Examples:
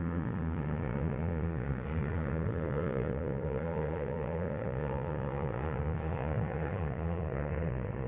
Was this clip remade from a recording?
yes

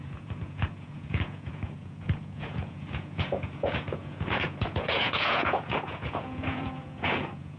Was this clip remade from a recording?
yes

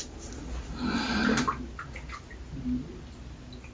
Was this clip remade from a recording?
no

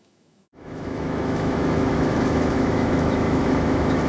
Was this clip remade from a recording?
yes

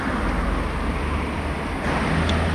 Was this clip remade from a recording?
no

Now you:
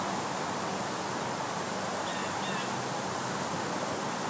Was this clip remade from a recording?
no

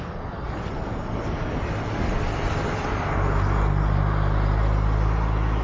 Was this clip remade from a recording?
no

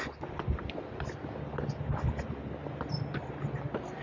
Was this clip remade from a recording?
no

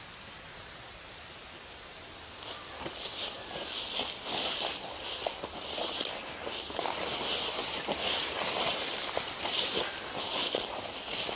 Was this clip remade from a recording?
no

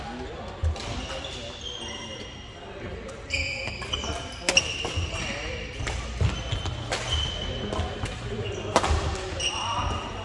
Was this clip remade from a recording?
no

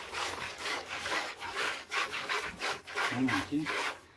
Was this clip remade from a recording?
yes